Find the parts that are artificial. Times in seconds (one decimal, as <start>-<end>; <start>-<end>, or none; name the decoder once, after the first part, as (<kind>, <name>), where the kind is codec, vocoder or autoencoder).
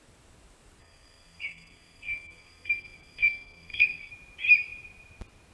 0.8-4.1 (codec, SNAC)